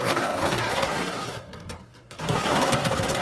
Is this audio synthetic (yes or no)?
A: yes